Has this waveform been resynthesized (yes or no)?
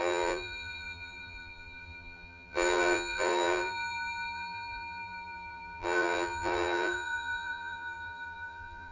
yes